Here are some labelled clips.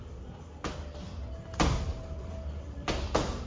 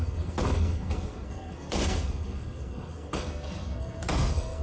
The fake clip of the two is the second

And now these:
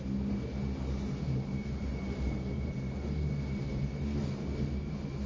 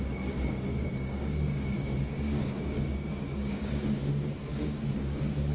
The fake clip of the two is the second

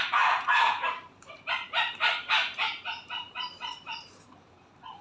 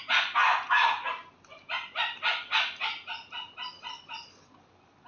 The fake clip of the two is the first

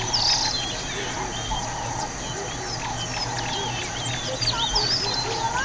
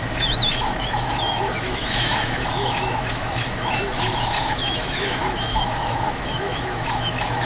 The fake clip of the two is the second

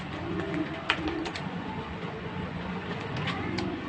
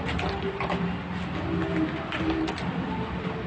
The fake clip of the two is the first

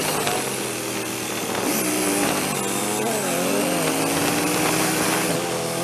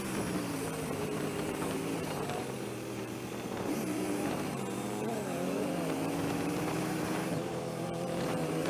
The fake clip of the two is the second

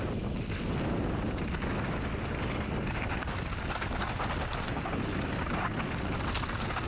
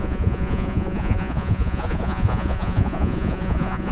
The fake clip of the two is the second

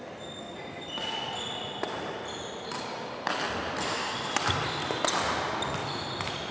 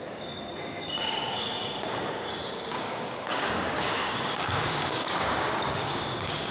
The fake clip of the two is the second